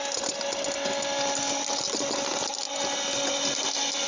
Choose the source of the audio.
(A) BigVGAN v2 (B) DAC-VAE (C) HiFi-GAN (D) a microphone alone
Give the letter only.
D